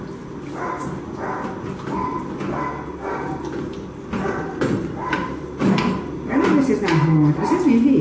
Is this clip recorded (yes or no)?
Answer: yes